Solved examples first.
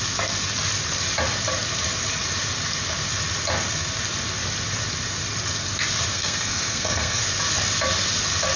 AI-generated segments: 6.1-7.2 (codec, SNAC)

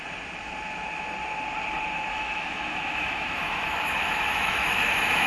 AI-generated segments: 2.1-5.3 (autoencoder, DAC-VAE)

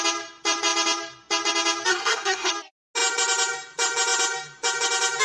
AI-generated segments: 1.9-2.5 (codec, SNAC)